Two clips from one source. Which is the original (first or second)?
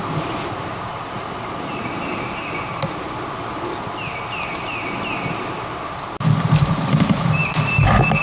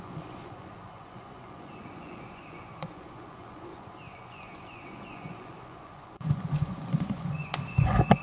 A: first